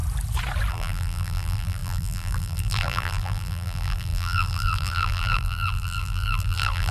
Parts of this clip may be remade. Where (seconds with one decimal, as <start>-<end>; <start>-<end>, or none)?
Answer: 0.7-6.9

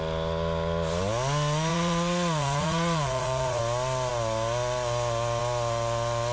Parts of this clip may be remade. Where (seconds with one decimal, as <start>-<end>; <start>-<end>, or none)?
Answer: 1.7-3.6

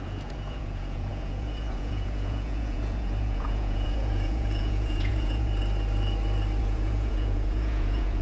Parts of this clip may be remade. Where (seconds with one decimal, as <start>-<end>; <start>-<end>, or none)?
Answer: 0.0-5.6; 6.6-8.2